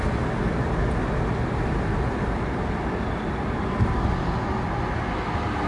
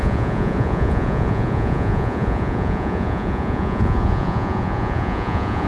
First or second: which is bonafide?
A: first